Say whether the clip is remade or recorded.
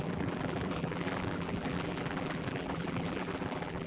remade